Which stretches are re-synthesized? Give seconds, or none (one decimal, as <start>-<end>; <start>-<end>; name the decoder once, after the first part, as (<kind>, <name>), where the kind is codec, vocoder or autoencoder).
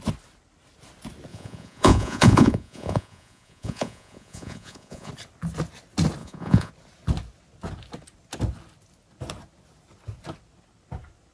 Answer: 1.3-5.1 (vocoder, Vocos); 6.2-6.7